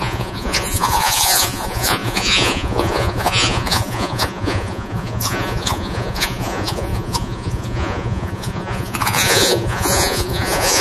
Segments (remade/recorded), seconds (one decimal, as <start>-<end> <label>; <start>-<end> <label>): 0.0-10.8 remade